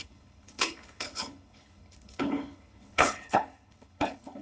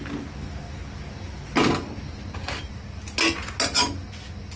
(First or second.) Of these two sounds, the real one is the second